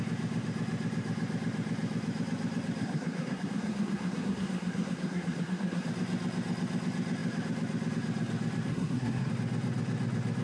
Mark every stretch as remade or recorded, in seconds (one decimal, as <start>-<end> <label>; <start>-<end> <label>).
0.0-2.8 recorded; 2.8-5.9 remade; 5.9-8.7 recorded; 8.7-9.3 remade; 9.3-10.4 recorded

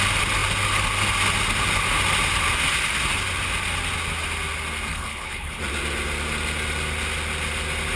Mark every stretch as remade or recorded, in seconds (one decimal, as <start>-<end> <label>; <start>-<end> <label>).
0.0-4.9 recorded; 4.9-5.6 remade; 5.6-8.0 recorded

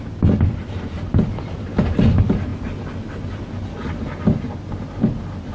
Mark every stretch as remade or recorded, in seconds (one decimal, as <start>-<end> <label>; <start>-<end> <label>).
0.0-5.5 recorded

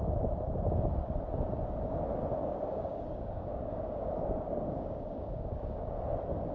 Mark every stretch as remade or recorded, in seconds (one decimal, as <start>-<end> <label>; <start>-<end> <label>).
0.0-2.4 recorded; 2.4-6.0 remade; 6.0-6.5 recorded

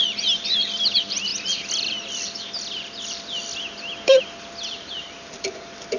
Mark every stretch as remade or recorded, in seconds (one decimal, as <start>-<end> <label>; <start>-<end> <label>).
0.0-6.0 remade

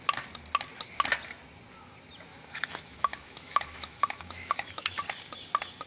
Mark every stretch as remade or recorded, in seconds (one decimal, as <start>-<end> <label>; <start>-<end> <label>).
0.0-2.3 recorded; 2.3-5.0 remade; 5.0-5.9 recorded